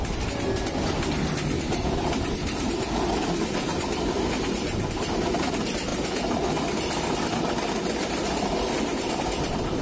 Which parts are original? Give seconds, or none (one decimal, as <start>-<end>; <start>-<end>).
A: 0.0-9.8

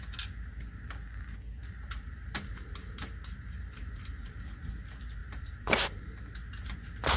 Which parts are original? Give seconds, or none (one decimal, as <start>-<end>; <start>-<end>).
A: 0.0-1.6; 4.7-5.2; 6.2-7.2

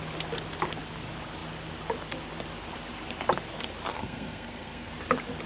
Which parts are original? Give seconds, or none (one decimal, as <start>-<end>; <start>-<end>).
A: 0.0-3.9; 4.9-5.5

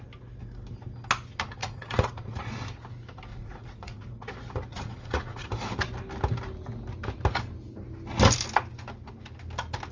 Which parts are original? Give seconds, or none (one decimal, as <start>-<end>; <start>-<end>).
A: 0.0-1.6; 2.5-3.3; 4.3-4.7; 5.5-9.9

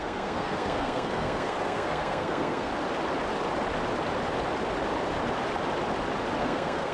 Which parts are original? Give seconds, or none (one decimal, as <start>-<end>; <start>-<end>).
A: 2.7-6.4